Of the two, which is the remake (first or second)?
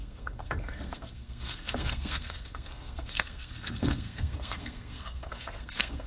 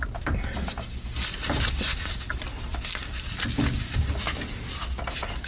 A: first